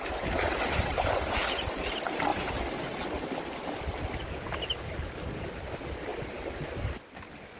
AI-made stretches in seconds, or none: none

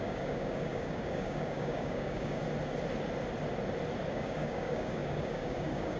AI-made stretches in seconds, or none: 0.0-2.4 (codec, DAC); 4.1-6.0

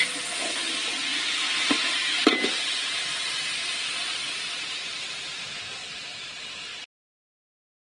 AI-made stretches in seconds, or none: 5.8-6.4 (vocoder, BigVGAN v2)